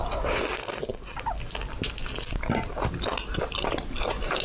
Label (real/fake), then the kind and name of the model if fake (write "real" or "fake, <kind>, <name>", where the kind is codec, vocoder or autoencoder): real